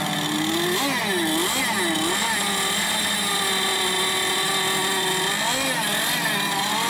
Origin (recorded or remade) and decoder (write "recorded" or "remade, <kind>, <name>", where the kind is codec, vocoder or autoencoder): recorded